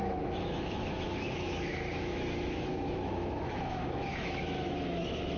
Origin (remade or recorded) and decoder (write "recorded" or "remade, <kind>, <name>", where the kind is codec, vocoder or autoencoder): remade, autoencoder, DAC-VAE